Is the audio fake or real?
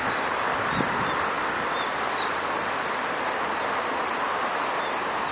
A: real